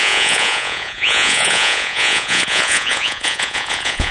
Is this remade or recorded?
remade